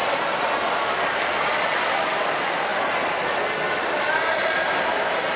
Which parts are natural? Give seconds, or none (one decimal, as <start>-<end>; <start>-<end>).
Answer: 0.0-5.4